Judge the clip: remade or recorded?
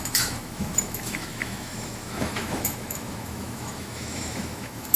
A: remade